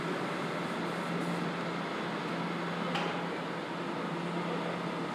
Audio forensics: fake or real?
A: real